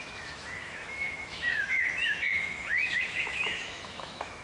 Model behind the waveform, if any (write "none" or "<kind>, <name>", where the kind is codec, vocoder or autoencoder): autoencoder, DAC-VAE